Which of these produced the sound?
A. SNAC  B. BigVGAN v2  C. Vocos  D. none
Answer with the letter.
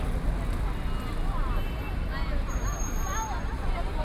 D